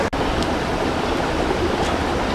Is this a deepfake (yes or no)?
no